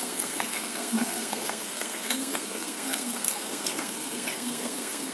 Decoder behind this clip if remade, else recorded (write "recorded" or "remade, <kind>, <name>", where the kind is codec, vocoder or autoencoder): remade, codec, SNAC